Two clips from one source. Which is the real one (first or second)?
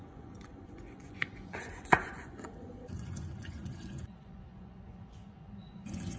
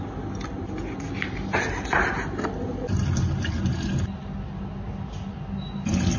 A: second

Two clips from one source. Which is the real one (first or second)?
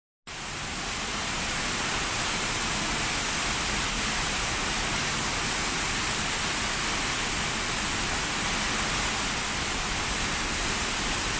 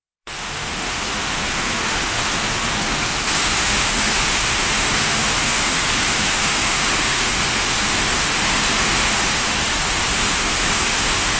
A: first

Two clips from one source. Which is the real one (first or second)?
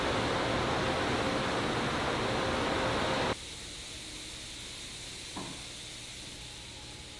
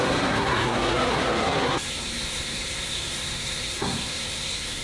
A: first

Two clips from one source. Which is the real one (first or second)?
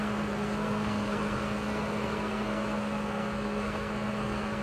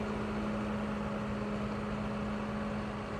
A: second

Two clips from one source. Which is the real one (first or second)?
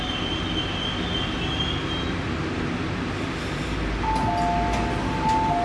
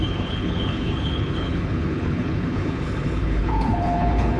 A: first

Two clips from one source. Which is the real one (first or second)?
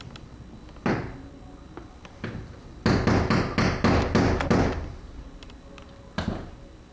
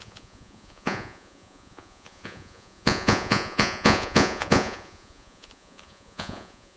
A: first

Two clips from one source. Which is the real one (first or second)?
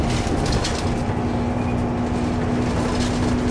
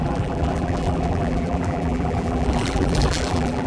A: first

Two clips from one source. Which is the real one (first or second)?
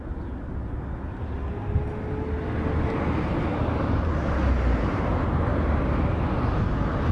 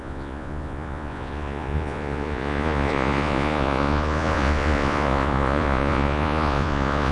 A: first